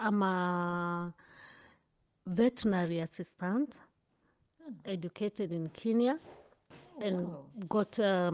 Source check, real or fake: fake